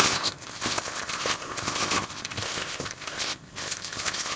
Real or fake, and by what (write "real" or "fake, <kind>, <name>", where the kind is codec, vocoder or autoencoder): fake, codec, ZipCodec